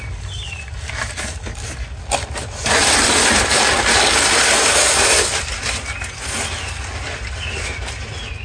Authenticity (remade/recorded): recorded